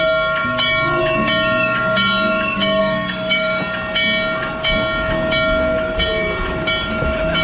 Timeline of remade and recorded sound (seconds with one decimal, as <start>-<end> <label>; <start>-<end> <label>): 0.0-2.8 recorded; 2.8-3.6 remade; 3.6-7.4 recorded